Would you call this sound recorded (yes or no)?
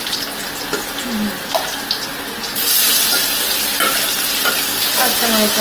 yes